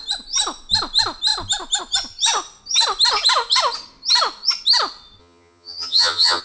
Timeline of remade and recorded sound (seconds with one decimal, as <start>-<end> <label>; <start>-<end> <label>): 0.0-5.2 recorded; 5.2-6.4 remade